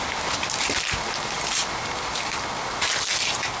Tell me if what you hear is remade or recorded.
recorded